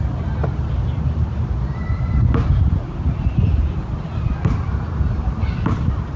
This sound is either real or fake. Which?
real